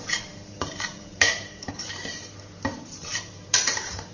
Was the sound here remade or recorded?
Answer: remade